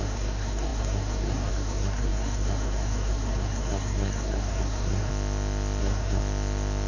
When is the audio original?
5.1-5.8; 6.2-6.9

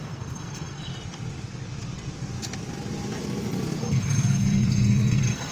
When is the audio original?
0.9-3.8